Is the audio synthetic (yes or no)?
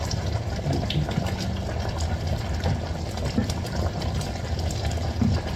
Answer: no